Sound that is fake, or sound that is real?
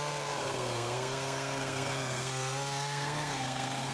fake